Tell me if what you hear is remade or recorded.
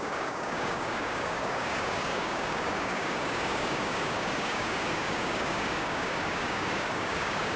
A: remade